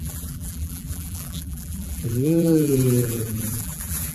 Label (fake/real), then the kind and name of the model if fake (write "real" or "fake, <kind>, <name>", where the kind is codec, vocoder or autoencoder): fake, vocoder, BigVGAN v2